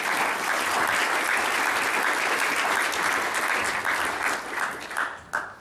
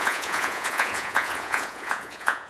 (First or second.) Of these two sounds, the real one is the first